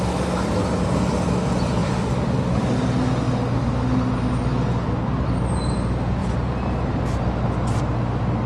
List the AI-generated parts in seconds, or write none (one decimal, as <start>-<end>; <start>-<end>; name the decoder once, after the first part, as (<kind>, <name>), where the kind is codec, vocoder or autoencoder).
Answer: 6.2-6.9 (vocoder, BigVGAN v2)